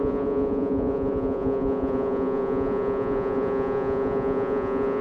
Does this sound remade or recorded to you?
remade